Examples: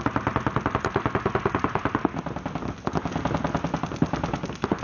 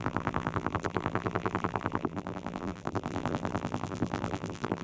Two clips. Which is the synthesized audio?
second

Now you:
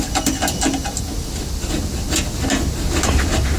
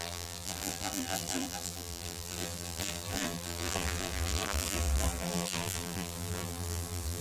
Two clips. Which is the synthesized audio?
second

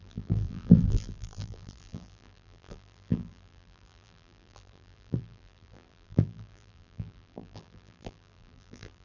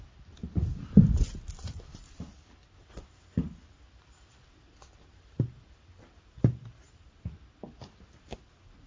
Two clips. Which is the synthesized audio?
first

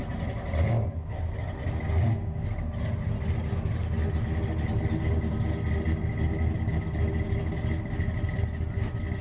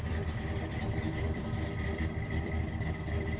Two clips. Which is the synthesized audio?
second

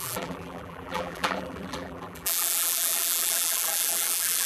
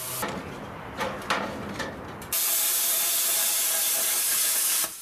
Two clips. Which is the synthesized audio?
first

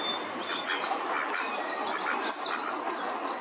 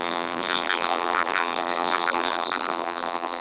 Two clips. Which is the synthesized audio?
second